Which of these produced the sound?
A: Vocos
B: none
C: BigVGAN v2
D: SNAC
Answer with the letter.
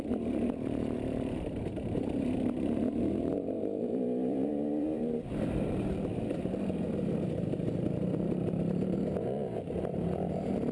C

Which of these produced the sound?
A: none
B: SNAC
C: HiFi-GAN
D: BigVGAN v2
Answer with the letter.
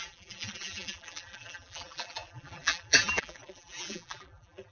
D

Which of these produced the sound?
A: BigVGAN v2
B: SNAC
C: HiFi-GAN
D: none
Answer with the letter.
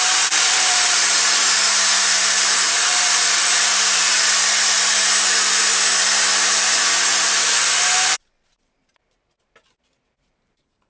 A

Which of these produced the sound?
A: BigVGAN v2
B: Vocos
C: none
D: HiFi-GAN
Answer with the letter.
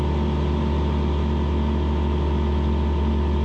C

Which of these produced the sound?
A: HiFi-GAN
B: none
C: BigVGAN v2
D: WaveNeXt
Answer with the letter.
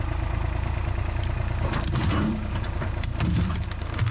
C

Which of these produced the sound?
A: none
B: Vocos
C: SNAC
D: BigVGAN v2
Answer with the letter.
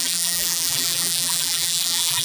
D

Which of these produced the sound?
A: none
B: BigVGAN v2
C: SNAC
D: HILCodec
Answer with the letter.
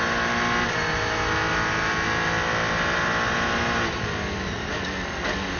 A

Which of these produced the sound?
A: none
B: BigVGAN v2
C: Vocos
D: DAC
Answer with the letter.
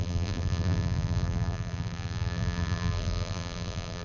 B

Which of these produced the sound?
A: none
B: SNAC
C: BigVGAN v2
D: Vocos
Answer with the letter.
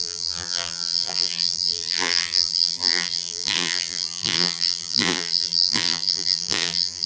C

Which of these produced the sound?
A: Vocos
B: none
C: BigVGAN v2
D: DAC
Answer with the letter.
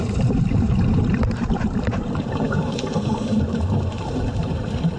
C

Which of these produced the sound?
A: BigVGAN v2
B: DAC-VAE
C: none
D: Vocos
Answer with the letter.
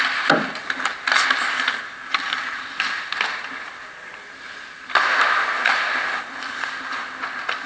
C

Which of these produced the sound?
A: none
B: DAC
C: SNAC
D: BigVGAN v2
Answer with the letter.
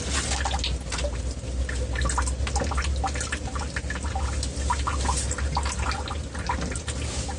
A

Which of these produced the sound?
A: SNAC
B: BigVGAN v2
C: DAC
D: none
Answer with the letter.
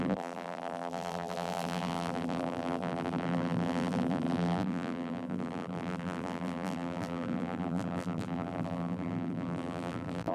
B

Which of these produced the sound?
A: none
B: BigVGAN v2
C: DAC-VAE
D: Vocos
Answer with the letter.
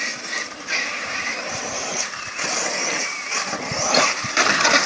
B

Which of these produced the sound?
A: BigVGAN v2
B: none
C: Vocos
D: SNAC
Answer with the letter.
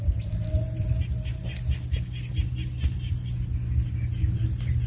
B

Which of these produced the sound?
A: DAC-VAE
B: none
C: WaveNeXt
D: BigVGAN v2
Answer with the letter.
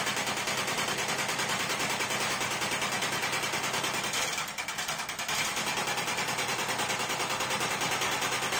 D